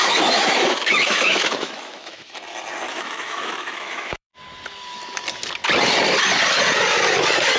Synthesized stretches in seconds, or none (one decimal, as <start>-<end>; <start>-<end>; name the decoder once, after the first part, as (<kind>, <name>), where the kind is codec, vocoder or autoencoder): 0.0-2.4 (autoencoder, DAC-VAE); 2.9-4.3